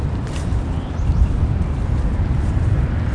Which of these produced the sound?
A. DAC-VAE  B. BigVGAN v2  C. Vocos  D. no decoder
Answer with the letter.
D